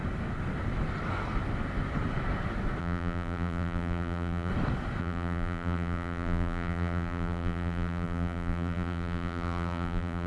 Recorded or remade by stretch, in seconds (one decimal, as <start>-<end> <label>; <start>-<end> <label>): 0.0-2.8 recorded; 2.8-4.5 remade; 4.5-5.0 recorded; 5.0-10.3 remade